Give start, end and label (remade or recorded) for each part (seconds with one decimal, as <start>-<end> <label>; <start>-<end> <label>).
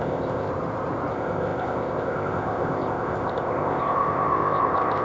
0.0-0.5 remade; 0.5-1.1 recorded; 1.1-5.0 remade